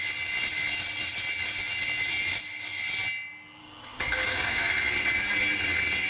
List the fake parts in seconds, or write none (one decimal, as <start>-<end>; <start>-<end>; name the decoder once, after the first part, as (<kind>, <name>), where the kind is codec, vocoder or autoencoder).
3.6-4.7 (codec, DAC)